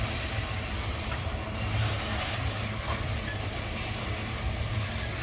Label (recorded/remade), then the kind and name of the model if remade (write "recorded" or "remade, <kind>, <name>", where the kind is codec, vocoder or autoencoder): remade, vocoder, BigVGAN v2